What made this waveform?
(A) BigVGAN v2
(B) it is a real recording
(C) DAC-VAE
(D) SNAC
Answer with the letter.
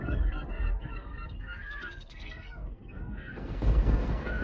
D